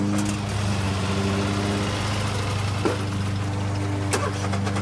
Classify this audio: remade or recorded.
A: recorded